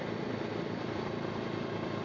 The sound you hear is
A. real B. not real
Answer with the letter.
B